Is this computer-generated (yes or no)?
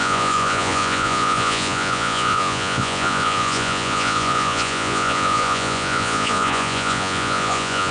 yes